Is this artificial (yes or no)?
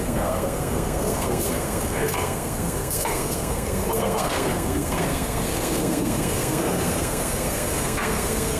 yes